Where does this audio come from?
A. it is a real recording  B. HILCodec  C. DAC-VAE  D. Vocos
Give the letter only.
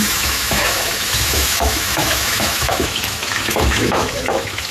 C